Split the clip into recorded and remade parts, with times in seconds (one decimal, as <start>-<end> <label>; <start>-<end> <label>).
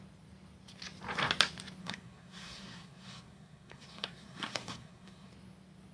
0.0-1.8 recorded; 1.8-5.3 remade; 5.3-5.9 recorded